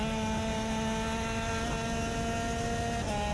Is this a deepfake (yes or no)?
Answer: no